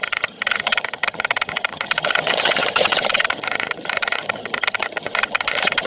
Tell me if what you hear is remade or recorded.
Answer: remade